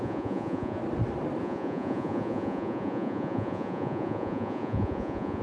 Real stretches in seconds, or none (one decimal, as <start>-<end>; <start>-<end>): 0.8-1.4